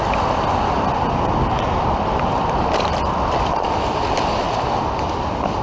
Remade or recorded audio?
recorded